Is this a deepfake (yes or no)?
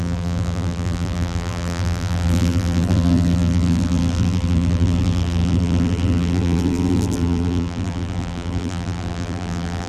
yes